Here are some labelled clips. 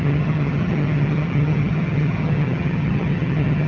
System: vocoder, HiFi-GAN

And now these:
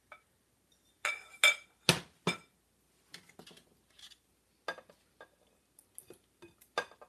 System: none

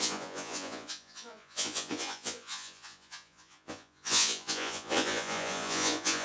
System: vocoder, Vocos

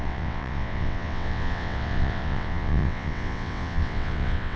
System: vocoder, WaveNeXt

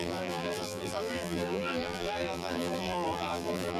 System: vocoder, BigVGAN v2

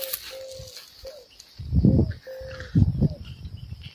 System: none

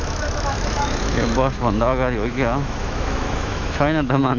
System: autoencoder, DAC-VAE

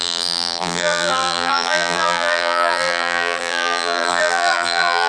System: vocoder, BigVGAN v2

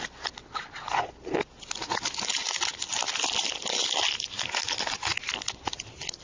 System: none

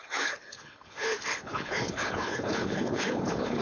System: codec, HILCodec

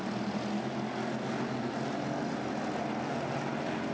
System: none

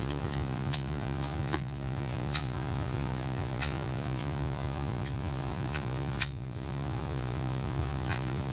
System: vocoder, Vocos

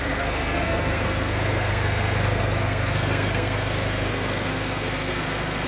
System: codec, SNAC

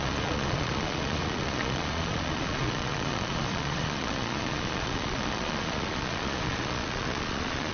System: vocoder, Vocos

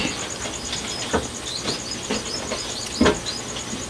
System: none